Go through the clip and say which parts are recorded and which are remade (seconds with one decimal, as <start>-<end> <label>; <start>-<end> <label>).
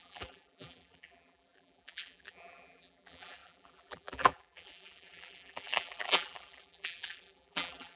0.0-8.0 remade